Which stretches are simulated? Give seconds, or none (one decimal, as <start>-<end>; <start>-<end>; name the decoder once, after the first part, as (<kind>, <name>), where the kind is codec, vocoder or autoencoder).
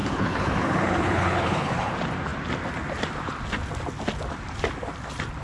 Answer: 0.0-1.9 (codec, HILCodec)